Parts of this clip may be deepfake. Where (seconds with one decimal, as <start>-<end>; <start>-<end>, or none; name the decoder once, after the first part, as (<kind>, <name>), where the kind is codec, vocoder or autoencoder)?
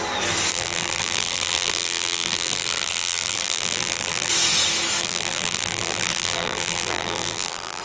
0.5-4.3 (vocoder, BigVGAN v2); 5.0-7.8